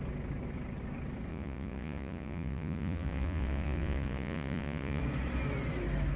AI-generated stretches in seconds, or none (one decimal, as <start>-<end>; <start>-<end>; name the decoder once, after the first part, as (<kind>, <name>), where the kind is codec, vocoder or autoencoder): 1.3-5.0 (vocoder, Vocos)